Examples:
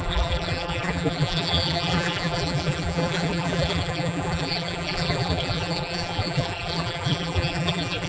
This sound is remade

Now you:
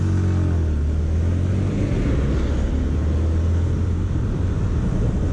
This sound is recorded